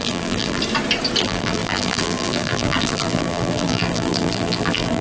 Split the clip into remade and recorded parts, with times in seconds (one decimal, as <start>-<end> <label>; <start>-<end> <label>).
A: 0.0-0.6 remade; 0.6-1.2 recorded; 1.2-5.0 remade

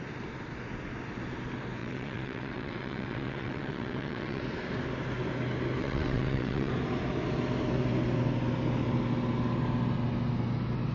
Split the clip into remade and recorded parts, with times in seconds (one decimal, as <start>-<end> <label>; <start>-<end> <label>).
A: 0.0-1.8 recorded; 1.8-4.4 remade; 4.4-5.8 recorded; 5.8-6.7 remade; 6.7-10.9 recorded

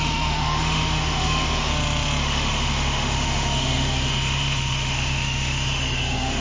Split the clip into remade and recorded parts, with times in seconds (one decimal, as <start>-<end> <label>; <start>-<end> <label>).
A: 0.0-1.7 remade; 1.7-2.2 recorded; 2.2-6.4 remade